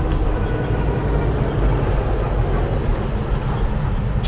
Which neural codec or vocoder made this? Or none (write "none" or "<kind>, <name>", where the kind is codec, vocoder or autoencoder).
none